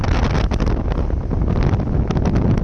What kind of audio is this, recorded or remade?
recorded